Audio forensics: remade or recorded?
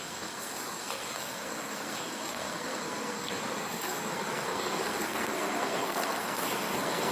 remade